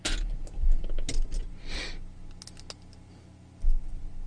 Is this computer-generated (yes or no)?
no